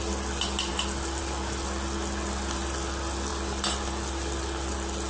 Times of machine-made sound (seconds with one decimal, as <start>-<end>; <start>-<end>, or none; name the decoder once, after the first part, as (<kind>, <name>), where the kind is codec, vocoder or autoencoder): none